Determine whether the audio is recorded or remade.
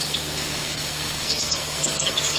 remade